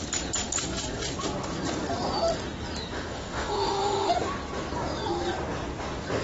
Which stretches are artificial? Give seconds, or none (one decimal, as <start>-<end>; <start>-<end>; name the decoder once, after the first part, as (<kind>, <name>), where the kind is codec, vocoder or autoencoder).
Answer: 3.1-4.1 (autoencoder, DAC-VAE)